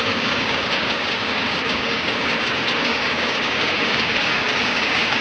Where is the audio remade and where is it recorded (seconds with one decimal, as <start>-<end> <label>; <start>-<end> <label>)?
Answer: 0.0-5.2 remade